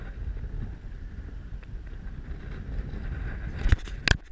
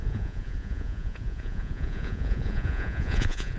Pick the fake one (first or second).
second